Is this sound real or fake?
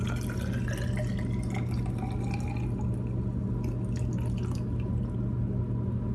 real